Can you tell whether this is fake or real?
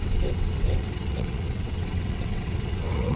fake